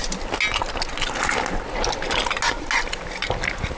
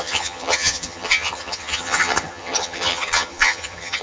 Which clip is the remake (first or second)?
second